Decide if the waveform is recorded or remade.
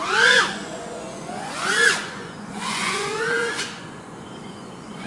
remade